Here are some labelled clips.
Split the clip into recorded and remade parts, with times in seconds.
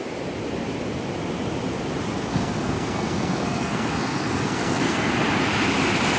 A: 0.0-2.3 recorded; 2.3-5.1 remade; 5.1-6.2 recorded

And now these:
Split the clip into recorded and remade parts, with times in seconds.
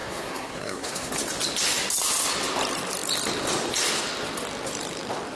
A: 0.0-1.1 remade; 1.1-5.4 recorded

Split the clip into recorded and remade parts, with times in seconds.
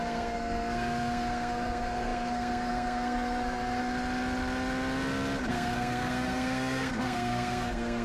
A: 0.0-3.8 remade; 3.8-5.5 recorded; 5.5-8.0 remade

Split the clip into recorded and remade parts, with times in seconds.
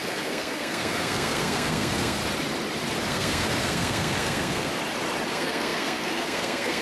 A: 0.0-2.2 remade; 2.2-3.1 recorded; 3.1-4.7 remade; 4.7-5.3 recorded; 5.3-6.8 remade